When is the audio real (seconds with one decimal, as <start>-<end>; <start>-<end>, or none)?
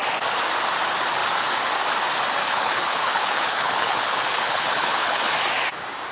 0.0-2.4; 5.3-6.1